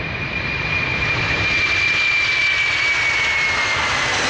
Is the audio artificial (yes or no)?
no